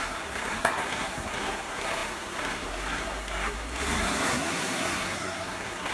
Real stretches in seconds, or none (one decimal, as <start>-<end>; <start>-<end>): none